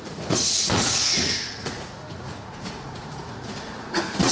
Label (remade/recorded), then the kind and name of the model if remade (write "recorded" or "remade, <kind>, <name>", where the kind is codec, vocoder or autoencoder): remade, vocoder, Vocos